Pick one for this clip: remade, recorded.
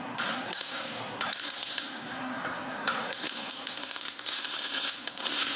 remade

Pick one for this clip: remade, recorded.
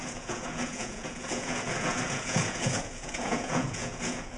remade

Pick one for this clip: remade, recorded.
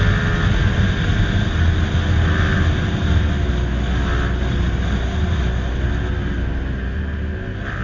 recorded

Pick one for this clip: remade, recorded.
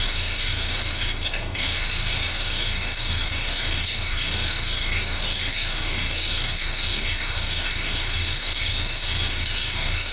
remade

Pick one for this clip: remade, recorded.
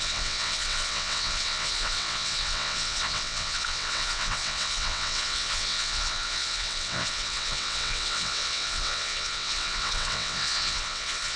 remade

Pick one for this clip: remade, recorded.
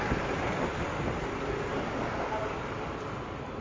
recorded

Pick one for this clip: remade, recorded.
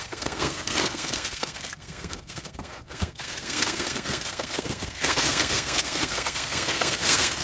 remade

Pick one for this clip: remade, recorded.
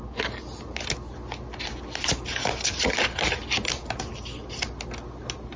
recorded